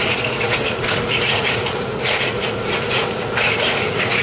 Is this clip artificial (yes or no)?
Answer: yes